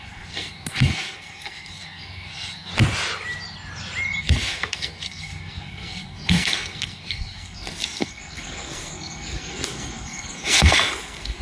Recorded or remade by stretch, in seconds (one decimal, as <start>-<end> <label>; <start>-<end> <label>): 0.0-2.7 remade; 2.7-4.2 recorded; 4.2-11.4 remade